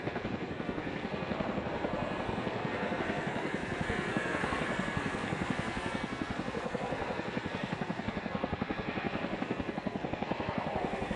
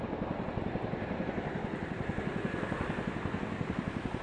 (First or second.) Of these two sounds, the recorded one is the second